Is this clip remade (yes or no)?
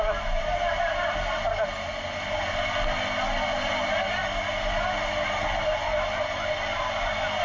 no